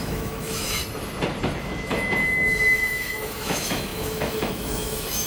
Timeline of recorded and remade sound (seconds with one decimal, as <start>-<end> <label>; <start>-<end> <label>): 0.0-0.8 remade; 0.8-1.6 recorded; 1.6-5.3 remade

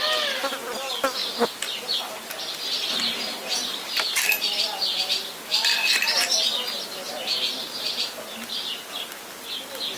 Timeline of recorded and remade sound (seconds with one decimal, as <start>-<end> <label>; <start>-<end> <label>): 0.0-10.0 recorded

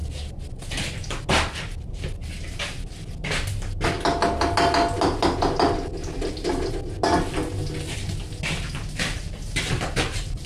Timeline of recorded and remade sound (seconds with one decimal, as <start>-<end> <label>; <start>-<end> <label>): 0.0-10.5 recorded